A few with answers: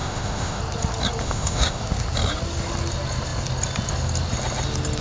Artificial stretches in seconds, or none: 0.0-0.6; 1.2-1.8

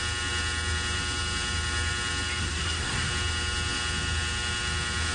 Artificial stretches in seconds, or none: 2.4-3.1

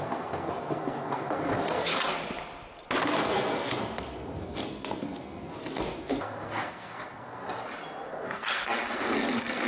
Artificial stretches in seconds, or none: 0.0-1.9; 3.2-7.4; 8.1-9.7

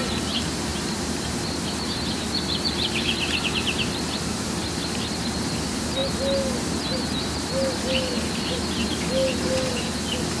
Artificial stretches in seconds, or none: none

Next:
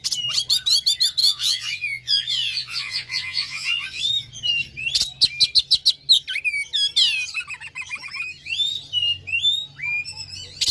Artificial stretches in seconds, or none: 1.2-4.0